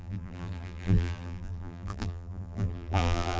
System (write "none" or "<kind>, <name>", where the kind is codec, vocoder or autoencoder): vocoder, BigVGAN v2